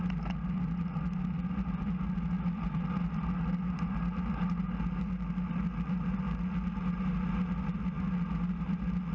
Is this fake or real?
real